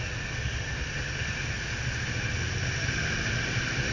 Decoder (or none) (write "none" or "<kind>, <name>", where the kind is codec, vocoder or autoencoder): none